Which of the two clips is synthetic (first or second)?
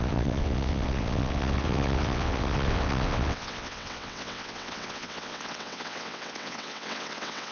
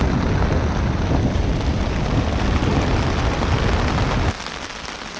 first